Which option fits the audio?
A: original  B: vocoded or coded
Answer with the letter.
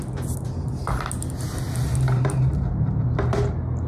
A